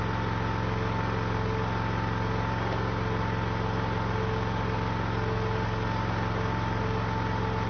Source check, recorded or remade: recorded